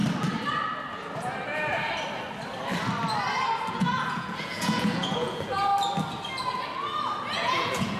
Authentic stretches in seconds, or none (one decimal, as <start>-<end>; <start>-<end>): 0.0-3.7; 5.7-7.2

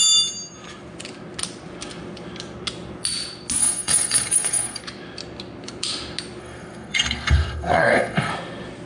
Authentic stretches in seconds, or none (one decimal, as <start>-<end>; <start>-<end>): 0.0-3.6; 4.8-6.4; 8.3-8.9

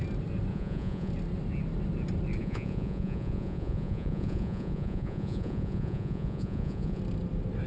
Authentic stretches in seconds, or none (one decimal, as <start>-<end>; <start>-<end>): 0.0-0.5; 1.1-2.4; 7.0-7.7

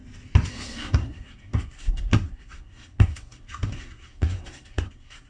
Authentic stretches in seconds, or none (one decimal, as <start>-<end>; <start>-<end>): 0.0-0.5

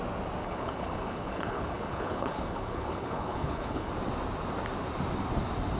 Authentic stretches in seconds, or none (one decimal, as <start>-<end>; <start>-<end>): 0.0-0.4; 3.9-5.8

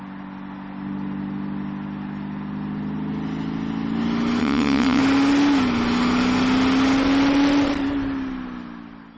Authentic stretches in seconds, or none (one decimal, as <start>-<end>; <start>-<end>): 0.0-4.4; 5.0-9.2

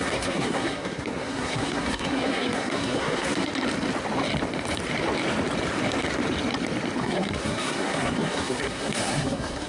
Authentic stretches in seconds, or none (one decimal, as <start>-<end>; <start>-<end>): 3.5-7.0

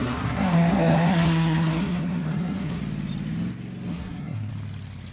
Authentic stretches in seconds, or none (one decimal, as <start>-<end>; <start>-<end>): 2.8-3.9; 4.5-5.1